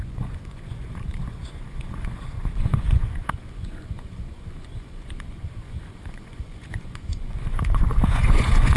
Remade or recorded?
remade